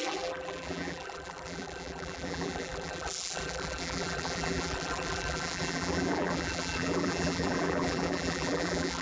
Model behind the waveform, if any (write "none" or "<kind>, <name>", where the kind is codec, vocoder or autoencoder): vocoder, BigVGAN v2